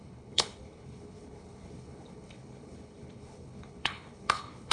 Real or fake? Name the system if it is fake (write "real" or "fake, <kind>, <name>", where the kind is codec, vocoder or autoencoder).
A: fake, codec, HILCodec